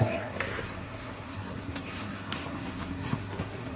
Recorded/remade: remade